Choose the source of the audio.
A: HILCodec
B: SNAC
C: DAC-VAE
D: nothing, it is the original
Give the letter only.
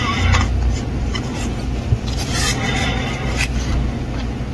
D